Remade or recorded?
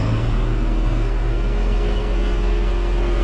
remade